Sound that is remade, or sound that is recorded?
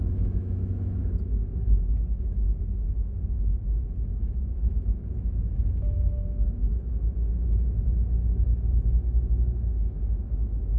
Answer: remade